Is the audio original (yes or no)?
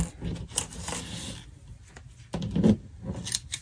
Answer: yes